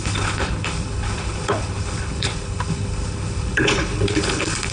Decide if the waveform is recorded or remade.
remade